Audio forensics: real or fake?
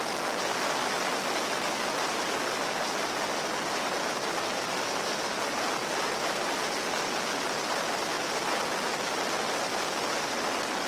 real